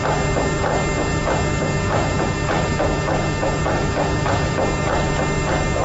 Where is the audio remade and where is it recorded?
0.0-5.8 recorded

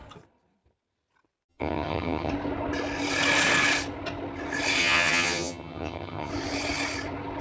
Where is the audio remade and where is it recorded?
0.0-1.5 recorded; 1.5-2.3 remade; 2.3-4.8 recorded; 4.8-6.3 remade; 6.3-7.4 recorded

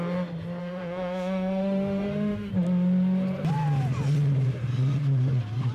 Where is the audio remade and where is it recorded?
0.0-0.6 recorded; 0.6-2.5 remade; 2.5-5.7 recorded

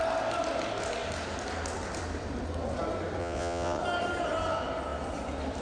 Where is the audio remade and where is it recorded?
0.0-3.2 recorded; 3.2-3.8 remade; 3.8-5.6 recorded

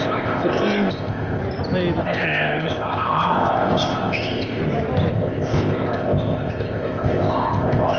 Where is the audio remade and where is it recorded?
0.0-1.4 remade; 1.4-2.0 recorded; 2.0-4.6 remade; 4.6-5.1 recorded; 5.1-8.0 remade

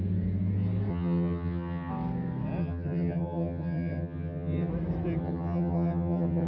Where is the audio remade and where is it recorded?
0.0-0.9 recorded; 0.9-1.9 remade; 1.9-2.6 recorded; 2.6-4.7 remade; 4.7-5.2 recorded; 5.2-6.5 remade

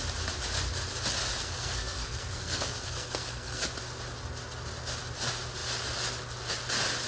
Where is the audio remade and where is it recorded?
0.0-1.4 recorded; 1.4-3.7 remade; 3.7-7.1 recorded

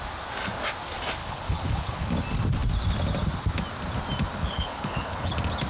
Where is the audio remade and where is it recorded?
0.0-1.2 recorded; 1.2-2.1 remade; 2.1-4.4 recorded; 4.4-5.3 remade; 5.3-5.7 recorded